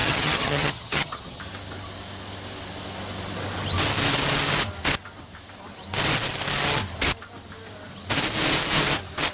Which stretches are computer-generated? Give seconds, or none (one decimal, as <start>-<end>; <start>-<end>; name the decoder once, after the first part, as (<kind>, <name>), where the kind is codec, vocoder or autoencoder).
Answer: 0.0-1.4 (vocoder, HiFi-GAN)